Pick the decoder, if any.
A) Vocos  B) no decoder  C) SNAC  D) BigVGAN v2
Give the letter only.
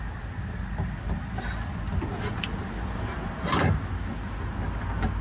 B